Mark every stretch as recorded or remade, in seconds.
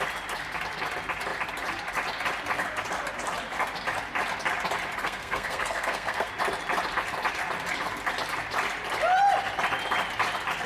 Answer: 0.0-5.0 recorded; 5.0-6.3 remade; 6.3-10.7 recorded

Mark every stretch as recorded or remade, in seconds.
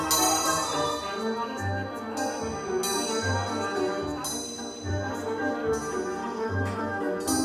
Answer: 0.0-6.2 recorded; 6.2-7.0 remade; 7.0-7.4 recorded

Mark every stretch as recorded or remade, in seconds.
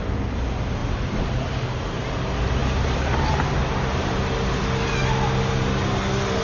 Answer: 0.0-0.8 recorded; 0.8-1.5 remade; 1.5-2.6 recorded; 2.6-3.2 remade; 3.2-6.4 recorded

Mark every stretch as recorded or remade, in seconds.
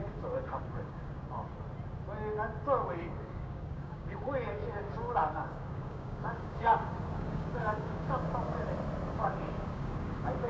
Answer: 0.0-1.5 remade; 1.5-2.8 recorded; 2.8-8.5 remade; 8.5-9.1 recorded; 9.1-10.5 remade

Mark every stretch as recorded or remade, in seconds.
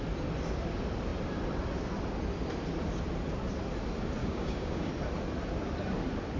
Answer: 0.0-4.2 recorded; 4.2-4.9 remade; 4.9-6.4 recorded